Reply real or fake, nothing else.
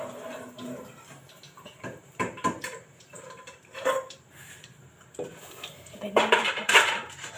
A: fake